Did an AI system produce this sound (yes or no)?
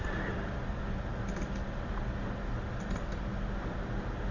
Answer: no